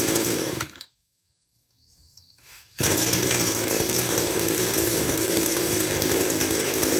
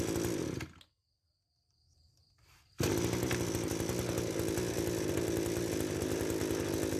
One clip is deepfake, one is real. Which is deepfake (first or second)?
first